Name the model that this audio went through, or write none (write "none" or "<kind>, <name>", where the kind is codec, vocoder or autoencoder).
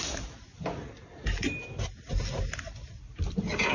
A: none